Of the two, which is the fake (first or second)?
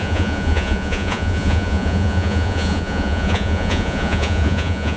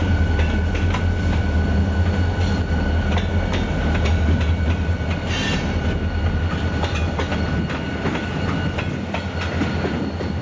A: first